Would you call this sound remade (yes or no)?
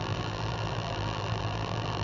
yes